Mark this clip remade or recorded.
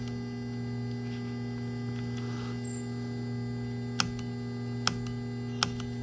recorded